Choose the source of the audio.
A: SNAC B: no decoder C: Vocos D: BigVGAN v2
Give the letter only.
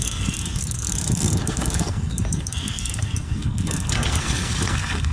A